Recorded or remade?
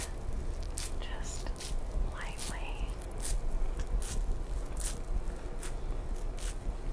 recorded